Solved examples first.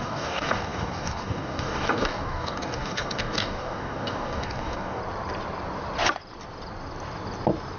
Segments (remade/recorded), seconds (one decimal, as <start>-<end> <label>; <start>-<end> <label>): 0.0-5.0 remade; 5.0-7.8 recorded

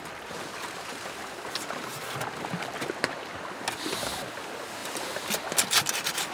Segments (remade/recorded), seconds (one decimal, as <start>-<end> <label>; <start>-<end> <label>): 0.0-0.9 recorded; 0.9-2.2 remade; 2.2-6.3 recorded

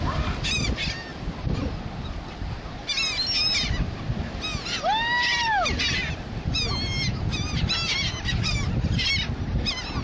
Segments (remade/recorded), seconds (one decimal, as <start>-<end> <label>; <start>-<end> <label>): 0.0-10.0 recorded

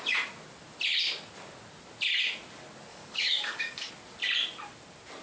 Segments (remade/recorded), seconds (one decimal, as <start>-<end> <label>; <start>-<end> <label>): 0.0-2.9 recorded; 2.9-3.9 remade; 3.9-5.2 recorded

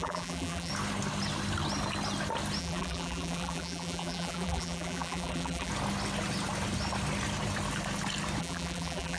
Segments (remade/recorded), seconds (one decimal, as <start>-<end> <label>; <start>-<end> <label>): 0.0-0.7 remade; 0.7-2.6 recorded; 2.6-5.7 remade; 5.7-8.4 recorded; 8.4-9.2 remade